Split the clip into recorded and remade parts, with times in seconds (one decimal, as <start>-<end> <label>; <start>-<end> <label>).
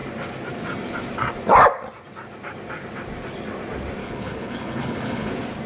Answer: 0.0-4.0 recorded; 4.0-5.3 remade; 5.3-5.7 recorded